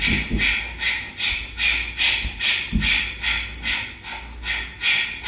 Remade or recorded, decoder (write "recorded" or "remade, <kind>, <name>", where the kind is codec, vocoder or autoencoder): recorded